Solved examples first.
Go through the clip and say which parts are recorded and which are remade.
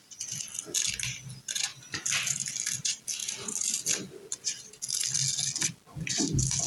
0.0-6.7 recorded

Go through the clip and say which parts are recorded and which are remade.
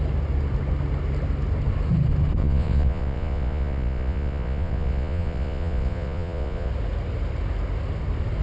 0.0-2.4 recorded; 2.4-6.7 remade; 6.7-8.4 recorded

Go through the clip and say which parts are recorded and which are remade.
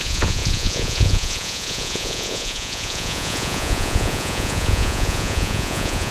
0.0-6.1 remade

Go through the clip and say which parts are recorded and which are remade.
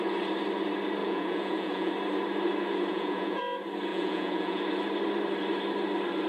0.0-1.0 recorded; 1.0-1.9 remade; 1.9-2.9 recorded; 2.9-3.4 remade; 3.4-3.9 recorded; 3.9-4.6 remade; 4.6-6.3 recorded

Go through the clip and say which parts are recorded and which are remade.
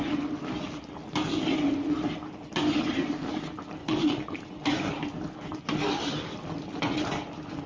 0.0-3.8 recorded; 3.8-4.4 remade; 4.4-7.7 recorded